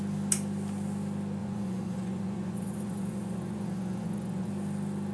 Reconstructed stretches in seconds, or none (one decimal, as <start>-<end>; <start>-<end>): 1.4-4.5